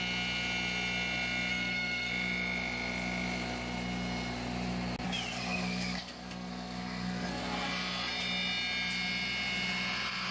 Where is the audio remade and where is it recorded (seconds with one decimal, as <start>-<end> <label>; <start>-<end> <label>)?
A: 0.0-1.5 recorded; 1.5-2.1 remade; 2.1-5.3 recorded; 5.3-7.4 remade; 7.4-10.3 recorded